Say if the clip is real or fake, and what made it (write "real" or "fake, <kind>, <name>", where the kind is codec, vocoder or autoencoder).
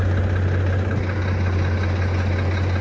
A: real